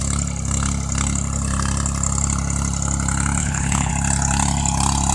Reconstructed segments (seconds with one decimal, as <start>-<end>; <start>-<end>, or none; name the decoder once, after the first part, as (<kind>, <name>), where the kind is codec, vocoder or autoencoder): 3.4-3.9 (codec, HILCodec)